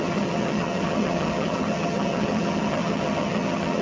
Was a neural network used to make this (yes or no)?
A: yes